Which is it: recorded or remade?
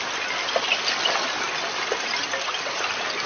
recorded